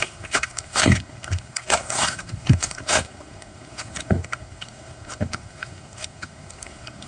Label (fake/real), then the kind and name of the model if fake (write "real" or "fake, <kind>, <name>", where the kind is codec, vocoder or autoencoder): fake, codec, SNAC